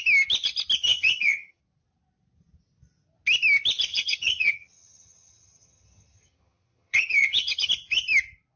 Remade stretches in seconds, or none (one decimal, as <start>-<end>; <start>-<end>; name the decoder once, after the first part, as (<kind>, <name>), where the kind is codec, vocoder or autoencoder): 0.9-1.6 (vocoder, HiFi-GAN); 3.9-7.7